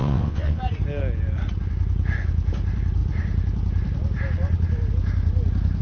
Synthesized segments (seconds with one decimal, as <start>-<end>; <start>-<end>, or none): 0.0-0.6